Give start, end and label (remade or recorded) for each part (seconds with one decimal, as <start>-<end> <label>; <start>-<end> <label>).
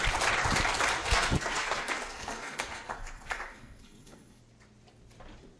0.0-1.0 recorded; 1.0-4.4 remade; 4.4-5.6 recorded